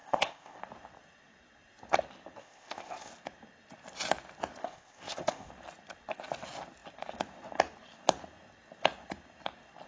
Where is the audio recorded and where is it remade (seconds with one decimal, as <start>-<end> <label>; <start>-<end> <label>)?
0.0-0.6 remade; 0.6-2.4 recorded; 2.4-3.1 remade; 3.1-4.6 recorded; 4.6-5.5 remade; 5.5-9.9 recorded